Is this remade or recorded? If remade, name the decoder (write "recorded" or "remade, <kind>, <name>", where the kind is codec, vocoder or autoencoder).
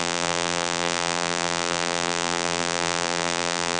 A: remade, vocoder, BigVGAN v2